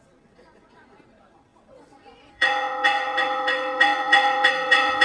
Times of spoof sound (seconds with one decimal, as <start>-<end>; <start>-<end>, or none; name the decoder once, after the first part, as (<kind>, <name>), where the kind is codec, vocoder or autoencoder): 0.0-5.0 (vocoder, WaveNeXt)